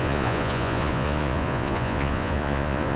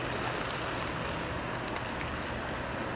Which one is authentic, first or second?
second